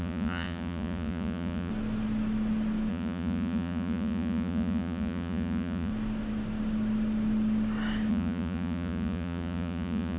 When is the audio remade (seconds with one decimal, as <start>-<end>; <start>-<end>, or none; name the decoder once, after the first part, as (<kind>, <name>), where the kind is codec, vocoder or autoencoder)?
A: 0.0-1.7 (vocoder, Vocos); 2.9-5.9; 8.1-10.2

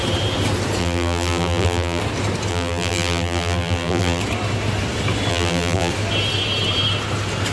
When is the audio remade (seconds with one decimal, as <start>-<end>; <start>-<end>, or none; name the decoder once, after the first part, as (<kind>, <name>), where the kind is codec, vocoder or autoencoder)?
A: 0.8-2.0 (vocoder, BigVGAN v2); 2.5-4.2; 5.3-5.9

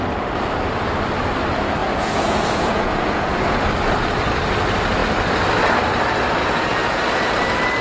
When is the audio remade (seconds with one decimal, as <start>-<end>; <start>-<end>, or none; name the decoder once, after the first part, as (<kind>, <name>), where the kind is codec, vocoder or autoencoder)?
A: 1.8-3.4 (vocoder, Vocos); 6.4-7.0

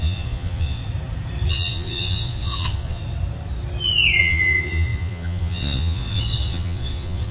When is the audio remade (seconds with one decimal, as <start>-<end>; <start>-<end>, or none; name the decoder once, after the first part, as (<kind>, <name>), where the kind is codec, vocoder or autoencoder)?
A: 0.0-0.8 (vocoder, Vocos); 1.5-3.0; 4.2-7.3

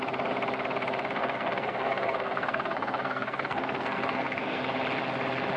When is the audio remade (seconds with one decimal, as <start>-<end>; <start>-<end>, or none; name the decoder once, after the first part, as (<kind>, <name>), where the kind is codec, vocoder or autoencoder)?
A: 1.2-4.6 (codec, SNAC)

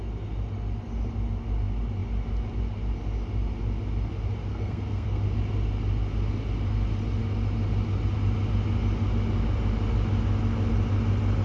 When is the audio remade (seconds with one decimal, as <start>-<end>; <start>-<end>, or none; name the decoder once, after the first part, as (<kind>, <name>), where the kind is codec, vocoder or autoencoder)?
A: 4.5-5.2 (codec, SNAC)

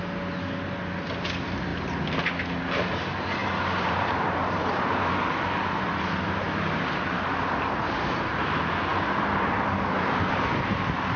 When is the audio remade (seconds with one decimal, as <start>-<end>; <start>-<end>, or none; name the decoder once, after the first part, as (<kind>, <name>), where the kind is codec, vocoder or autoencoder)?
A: 3.4-5.8 (vocoder, BigVGAN v2); 8.9-10.7